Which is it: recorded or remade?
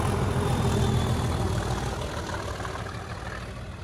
recorded